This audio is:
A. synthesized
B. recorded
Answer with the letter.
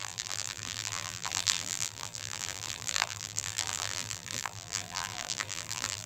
A